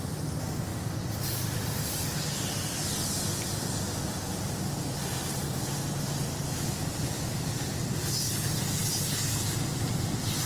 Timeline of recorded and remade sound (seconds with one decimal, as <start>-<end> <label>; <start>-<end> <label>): 0.0-10.5 recorded